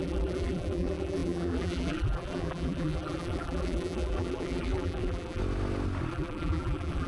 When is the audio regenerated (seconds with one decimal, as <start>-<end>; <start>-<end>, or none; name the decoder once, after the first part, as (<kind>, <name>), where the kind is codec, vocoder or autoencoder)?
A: 0.0-5.4 (vocoder, BigVGAN v2); 6.1-7.1